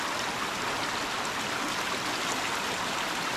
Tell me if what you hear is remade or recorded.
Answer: recorded